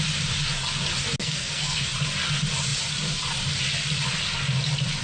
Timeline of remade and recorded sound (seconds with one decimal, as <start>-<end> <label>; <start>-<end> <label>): 0.0-1.2 recorded; 1.2-1.9 remade; 1.9-5.0 recorded